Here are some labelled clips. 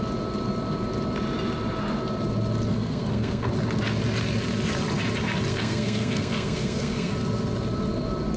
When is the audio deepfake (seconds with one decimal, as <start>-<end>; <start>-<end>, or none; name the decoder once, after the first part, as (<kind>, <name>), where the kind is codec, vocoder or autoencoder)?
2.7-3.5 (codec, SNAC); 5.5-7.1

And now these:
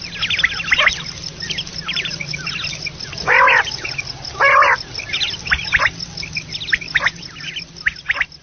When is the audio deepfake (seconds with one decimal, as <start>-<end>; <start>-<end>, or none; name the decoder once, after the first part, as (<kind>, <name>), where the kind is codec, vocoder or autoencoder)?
1.7-2.3 (vocoder, BigVGAN v2)

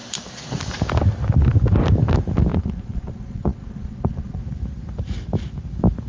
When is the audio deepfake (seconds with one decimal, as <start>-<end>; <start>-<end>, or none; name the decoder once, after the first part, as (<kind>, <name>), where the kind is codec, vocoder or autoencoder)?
2.5-4.4 (vocoder, Vocos)

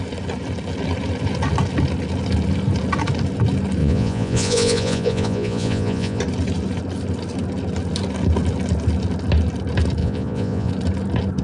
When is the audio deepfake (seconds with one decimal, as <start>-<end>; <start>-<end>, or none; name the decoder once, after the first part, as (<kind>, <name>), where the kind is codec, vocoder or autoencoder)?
3.8-6.2 (vocoder, Vocos); 10.0-10.7

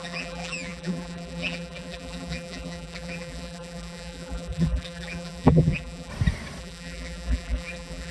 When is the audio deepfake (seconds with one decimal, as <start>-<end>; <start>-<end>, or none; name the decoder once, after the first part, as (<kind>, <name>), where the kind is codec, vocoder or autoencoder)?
0.0-6.1 (vocoder, BigVGAN v2); 6.6-8.1